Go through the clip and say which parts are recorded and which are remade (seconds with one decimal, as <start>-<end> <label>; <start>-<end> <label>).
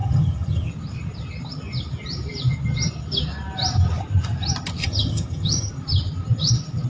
0.0-0.7 remade; 0.7-4.8 recorded; 4.8-5.7 remade; 5.7-6.9 recorded